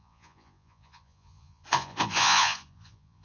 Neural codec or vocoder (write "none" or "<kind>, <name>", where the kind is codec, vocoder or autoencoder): vocoder, Vocos